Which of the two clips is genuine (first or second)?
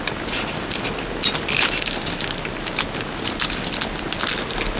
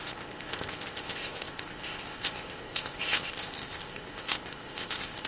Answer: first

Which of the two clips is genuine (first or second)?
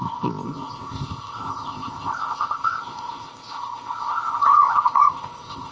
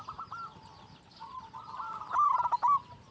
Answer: second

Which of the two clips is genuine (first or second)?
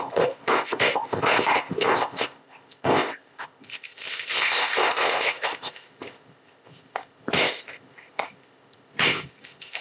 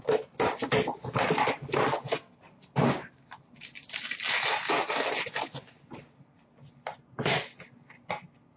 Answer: second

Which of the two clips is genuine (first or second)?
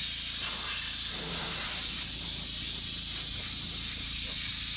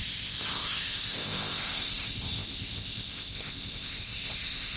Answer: first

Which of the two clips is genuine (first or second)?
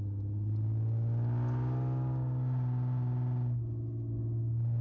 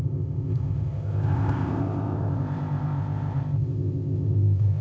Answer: first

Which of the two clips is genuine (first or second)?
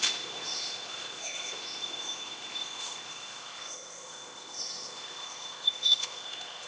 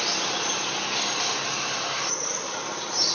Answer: second